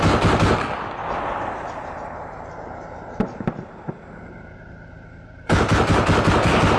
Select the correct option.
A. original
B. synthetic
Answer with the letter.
A